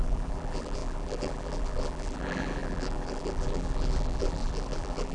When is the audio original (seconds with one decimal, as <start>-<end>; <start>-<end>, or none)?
none